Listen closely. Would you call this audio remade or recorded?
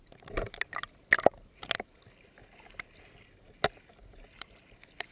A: recorded